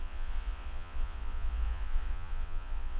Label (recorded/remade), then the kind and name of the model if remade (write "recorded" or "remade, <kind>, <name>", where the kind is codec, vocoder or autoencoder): remade, vocoder, Vocos